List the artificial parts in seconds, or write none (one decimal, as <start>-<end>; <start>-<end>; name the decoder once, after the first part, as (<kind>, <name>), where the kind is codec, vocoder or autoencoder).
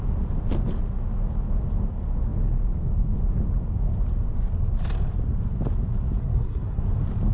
6.2-6.8 (codec, SNAC)